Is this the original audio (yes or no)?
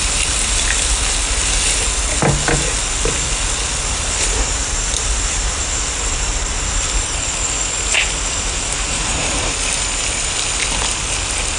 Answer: yes